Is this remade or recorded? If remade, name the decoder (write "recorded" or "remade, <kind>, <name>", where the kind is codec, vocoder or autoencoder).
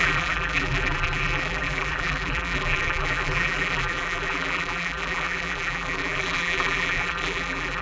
remade, vocoder, BigVGAN v2